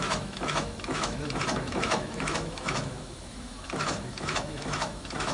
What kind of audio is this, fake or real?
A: fake